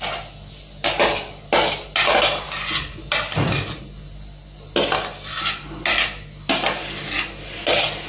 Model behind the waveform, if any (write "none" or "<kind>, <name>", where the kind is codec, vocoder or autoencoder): none